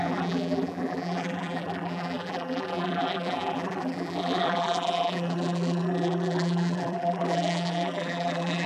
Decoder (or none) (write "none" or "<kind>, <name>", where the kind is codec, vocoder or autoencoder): vocoder, BigVGAN v2